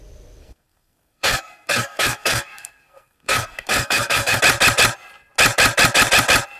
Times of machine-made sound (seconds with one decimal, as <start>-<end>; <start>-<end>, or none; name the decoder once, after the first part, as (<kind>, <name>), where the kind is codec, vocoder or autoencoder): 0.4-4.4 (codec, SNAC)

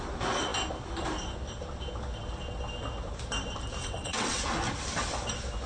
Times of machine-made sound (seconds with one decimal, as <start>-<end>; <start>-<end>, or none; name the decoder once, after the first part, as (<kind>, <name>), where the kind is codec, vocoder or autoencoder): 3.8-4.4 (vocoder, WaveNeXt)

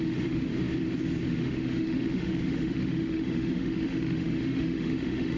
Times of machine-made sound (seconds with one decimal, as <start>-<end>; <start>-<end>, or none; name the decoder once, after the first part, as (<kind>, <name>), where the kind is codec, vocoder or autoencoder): 0.0-0.5 (autoencoder, DAC-VAE); 1.3-5.4

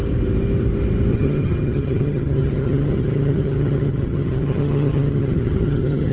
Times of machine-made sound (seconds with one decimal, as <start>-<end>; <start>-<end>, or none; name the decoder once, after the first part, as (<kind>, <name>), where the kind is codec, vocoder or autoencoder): 1.1-6.1 (vocoder, HiFi-GAN)

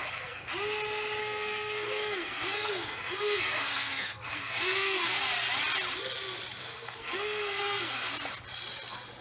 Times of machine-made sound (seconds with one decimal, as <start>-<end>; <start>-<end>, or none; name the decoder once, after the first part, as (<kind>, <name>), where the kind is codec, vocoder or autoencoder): 0.0-0.5 (codec, SNAC); 1.2-5.2; 6.6-8.1